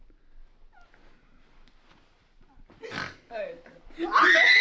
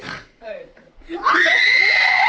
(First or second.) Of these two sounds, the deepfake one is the second